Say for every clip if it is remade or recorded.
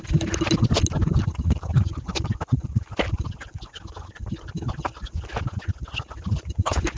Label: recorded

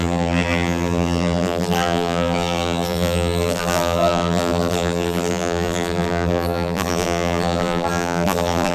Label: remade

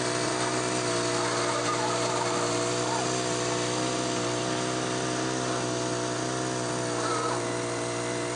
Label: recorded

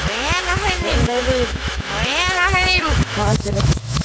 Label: remade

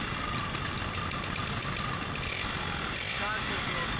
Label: recorded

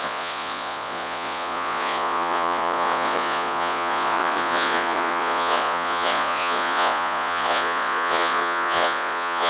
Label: remade